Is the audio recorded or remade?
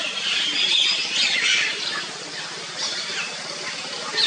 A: remade